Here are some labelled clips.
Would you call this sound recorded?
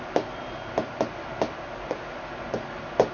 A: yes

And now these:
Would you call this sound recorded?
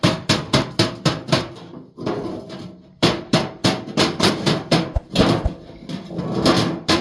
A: no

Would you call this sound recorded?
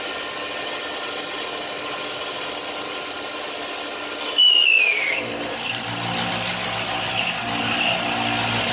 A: yes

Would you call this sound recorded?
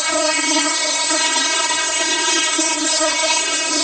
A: no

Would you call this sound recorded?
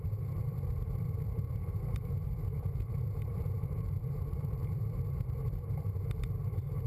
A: no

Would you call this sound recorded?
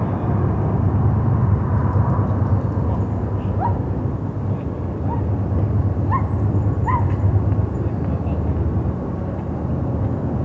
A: yes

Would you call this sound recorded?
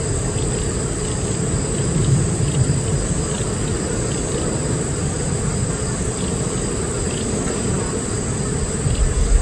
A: yes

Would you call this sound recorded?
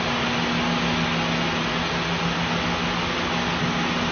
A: yes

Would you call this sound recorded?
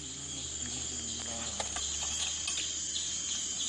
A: yes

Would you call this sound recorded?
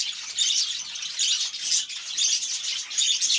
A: yes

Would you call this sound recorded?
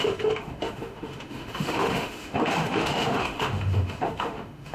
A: no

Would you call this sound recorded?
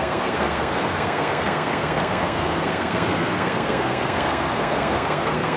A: no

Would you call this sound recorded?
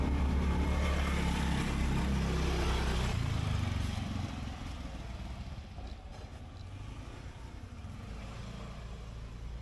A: yes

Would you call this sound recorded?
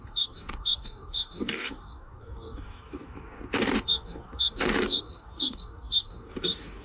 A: no